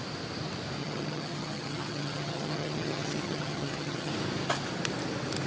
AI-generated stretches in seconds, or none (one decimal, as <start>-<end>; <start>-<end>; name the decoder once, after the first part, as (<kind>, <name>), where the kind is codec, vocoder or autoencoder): 0.8-4.1 (vocoder, HiFi-GAN)